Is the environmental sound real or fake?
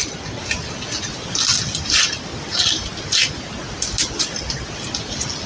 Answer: real